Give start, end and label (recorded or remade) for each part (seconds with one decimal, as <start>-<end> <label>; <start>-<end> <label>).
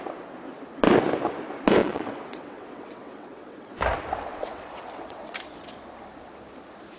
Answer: 0.0-1.8 recorded; 1.8-3.7 remade; 3.7-4.3 recorded; 4.3-5.3 remade; 5.3-7.0 recorded